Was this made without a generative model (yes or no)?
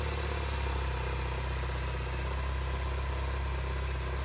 yes